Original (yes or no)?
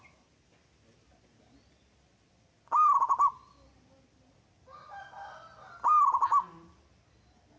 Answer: yes